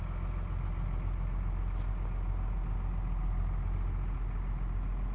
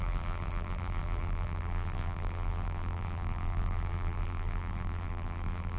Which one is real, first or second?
first